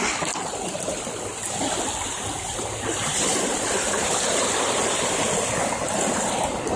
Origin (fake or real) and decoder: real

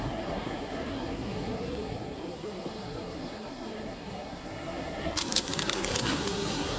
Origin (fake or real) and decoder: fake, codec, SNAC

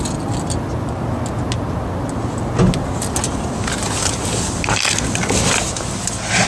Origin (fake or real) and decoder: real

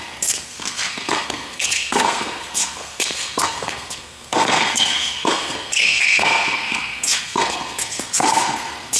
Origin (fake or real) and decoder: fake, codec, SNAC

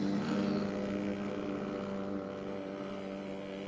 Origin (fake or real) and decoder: real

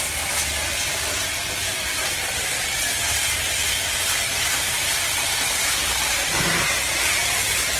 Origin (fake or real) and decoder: real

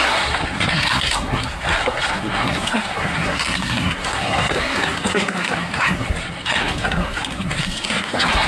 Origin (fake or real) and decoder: fake, codec, SNAC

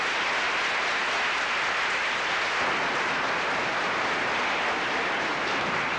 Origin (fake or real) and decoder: real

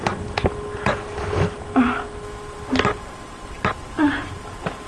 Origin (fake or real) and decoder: real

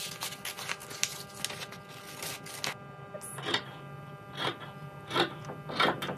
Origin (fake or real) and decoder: real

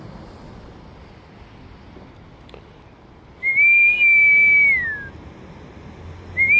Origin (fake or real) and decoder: real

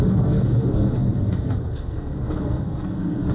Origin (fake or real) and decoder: fake, codec, SNAC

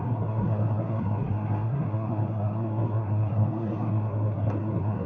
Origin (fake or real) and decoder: fake, codec, SNAC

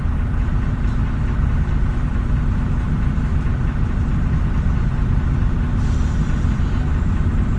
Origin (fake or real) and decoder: real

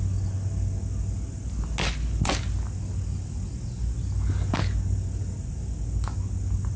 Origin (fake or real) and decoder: real